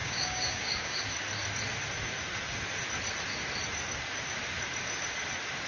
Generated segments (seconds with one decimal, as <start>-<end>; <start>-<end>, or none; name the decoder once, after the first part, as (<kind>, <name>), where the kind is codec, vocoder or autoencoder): 0.0-1.0 (codec, DAC)